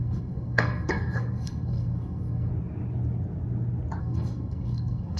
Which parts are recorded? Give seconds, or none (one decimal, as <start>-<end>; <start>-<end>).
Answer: 2.5-4.0